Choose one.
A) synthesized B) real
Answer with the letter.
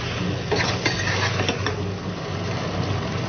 B